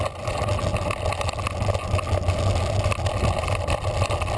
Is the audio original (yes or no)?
yes